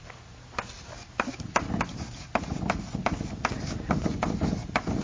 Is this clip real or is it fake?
real